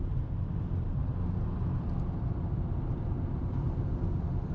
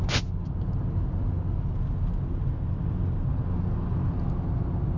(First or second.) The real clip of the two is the second